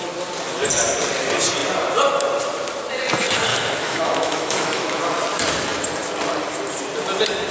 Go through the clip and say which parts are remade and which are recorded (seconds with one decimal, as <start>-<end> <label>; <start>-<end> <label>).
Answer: 0.0-3.5 recorded; 3.5-5.0 remade; 5.0-7.5 recorded